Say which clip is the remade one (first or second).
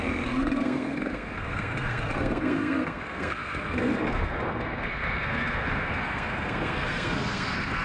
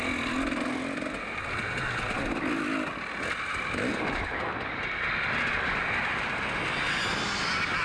first